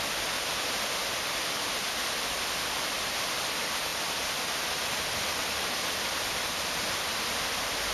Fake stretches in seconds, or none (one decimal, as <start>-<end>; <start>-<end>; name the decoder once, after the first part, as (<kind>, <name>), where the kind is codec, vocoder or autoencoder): none